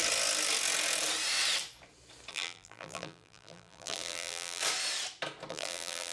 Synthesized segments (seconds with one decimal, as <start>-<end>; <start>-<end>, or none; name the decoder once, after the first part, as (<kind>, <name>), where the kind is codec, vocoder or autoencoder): 2.3-4.6 (vocoder, BigVGAN v2); 5.5-6.1